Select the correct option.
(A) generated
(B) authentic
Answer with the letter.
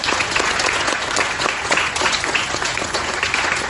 A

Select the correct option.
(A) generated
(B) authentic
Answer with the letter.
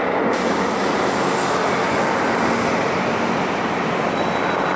B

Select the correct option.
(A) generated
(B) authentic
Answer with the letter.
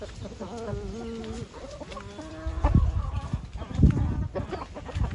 B